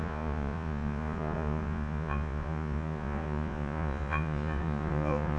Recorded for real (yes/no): no